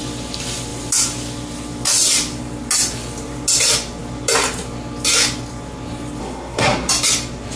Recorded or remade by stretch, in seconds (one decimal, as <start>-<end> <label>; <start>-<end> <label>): 0.0-6.2 recorded; 6.2-6.9 remade; 6.9-7.6 recorded